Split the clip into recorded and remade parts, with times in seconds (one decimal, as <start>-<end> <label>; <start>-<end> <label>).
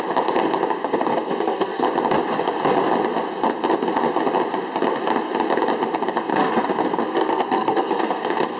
0.0-0.8 recorded; 0.8-1.8 remade; 1.8-6.3 recorded; 6.3-8.6 remade